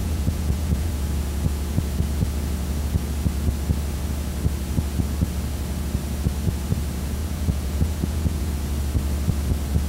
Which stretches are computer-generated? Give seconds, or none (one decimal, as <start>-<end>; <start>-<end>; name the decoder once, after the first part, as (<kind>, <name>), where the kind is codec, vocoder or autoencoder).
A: 0.0-0.9 (vocoder, Vocos); 7.2-8.5